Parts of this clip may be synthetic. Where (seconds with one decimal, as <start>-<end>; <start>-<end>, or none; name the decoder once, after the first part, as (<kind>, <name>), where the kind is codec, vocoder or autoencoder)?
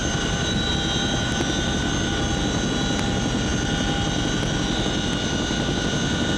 0.0-0.7 (vocoder, BigVGAN v2)